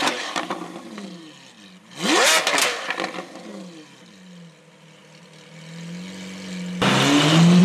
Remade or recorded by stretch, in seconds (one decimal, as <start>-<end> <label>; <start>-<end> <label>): 0.0-0.9 remade; 0.9-7.6 recorded